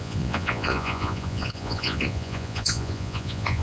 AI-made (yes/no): yes